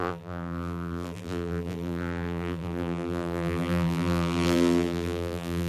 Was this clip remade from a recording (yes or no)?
yes